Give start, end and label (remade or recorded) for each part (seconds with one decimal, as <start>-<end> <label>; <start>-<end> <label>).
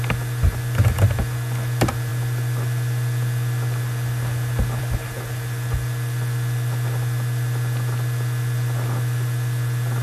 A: 0.0-10.0 recorded